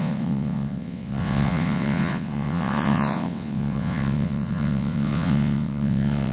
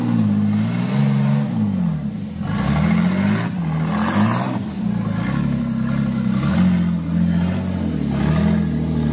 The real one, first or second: second